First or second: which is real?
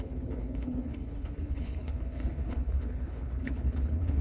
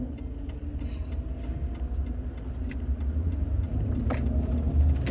second